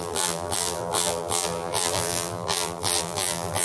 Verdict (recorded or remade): remade